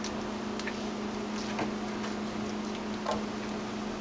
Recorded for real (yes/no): yes